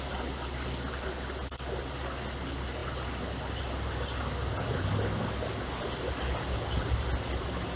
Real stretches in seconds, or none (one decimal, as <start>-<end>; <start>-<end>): 0.0-7.8